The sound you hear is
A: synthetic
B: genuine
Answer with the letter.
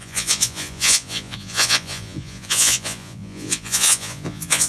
A